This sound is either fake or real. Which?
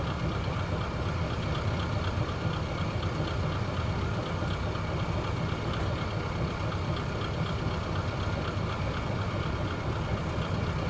real